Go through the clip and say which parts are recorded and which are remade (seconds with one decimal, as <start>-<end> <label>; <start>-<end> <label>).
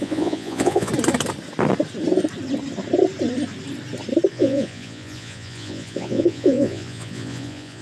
0.0-0.9 remade; 0.9-4.3 recorded; 4.3-7.8 remade